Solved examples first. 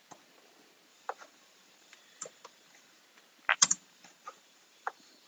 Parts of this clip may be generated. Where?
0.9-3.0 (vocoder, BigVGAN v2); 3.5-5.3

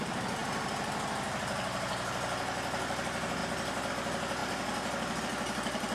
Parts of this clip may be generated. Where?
0.0-0.4 (vocoder, BigVGAN v2); 2.1-5.9

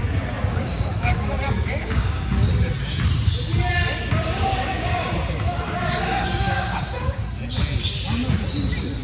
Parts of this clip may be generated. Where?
0.0-2.4 (codec, DAC); 3.7-7.2